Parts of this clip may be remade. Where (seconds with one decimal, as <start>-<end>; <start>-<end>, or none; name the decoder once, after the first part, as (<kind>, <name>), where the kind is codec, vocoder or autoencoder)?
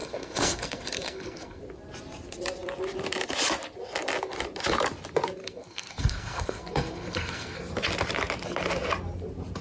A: 0.0-1.6 (codec, SNAC); 5.4-7.6